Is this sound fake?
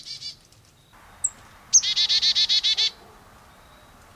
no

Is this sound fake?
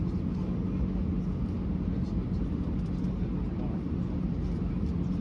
no